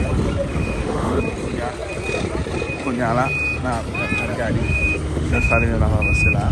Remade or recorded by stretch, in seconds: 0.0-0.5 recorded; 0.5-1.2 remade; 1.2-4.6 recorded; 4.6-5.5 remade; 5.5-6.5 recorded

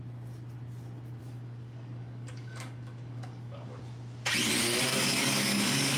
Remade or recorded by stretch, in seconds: 0.0-1.2 recorded; 1.2-3.8 remade; 3.8-4.9 recorded; 4.9-6.0 remade